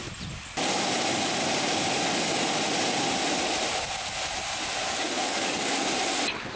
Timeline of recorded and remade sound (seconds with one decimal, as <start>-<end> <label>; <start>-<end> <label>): 0.0-4.8 recorded; 4.8-5.7 remade; 5.7-6.6 recorded